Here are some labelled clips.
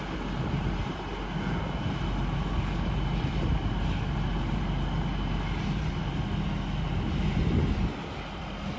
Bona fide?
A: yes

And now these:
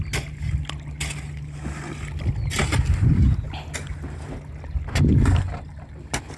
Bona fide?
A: yes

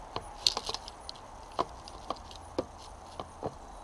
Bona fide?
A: yes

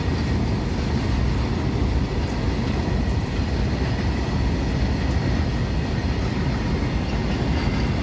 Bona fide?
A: yes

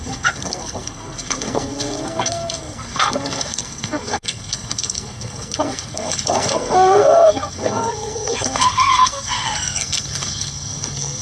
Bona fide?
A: no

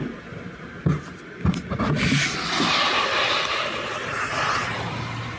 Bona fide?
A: yes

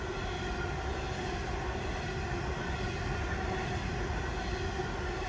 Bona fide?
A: yes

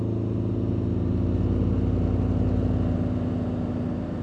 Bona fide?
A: yes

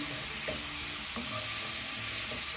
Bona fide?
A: yes